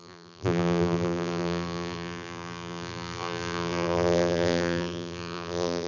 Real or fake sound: fake